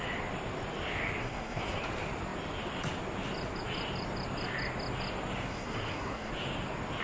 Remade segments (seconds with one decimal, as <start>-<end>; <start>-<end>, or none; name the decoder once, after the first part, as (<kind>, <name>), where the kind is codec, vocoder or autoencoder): 1.2-1.8 (codec, SNAC); 5.5-6.3